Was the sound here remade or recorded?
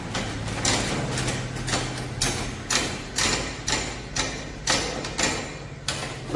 recorded